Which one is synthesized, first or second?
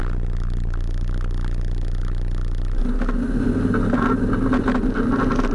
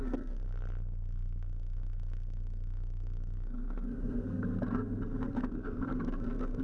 second